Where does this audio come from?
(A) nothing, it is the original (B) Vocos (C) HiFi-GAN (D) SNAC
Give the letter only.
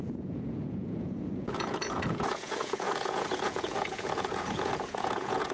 B